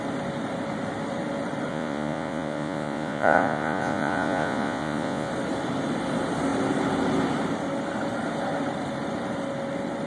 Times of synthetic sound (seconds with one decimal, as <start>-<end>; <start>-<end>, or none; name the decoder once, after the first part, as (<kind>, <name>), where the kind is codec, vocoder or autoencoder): 1.7-5.3 (vocoder, Vocos)